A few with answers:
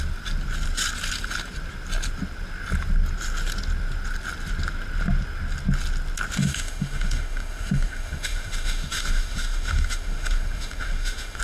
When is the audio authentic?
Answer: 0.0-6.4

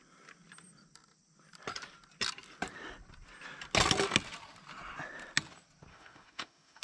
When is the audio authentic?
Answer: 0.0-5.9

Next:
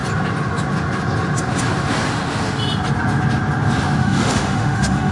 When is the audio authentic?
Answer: 0.0-4.0

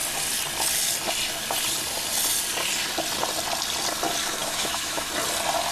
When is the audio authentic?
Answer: 0.0-4.4; 5.1-5.7

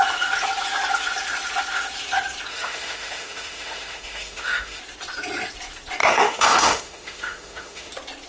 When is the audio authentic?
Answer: 0.0-2.5; 4.8-6.0; 7.9-8.3